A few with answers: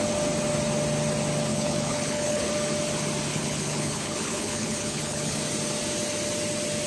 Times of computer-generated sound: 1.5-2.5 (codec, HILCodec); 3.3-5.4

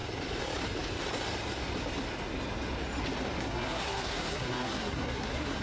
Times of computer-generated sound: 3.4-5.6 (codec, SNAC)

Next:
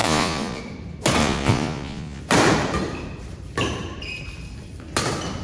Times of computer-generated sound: 0.0-0.6 (vocoder, Vocos); 1.2-2.2

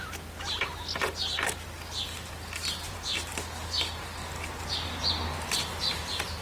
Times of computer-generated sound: none

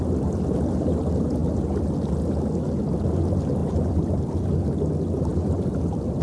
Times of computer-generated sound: 3.6-4.3 (vocoder, BigVGAN v2); 5.3-6.2

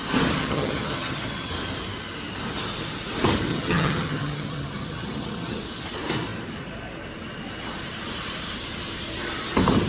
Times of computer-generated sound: 0.4-1.5 (vocoder, HiFi-GAN); 3.5-5.6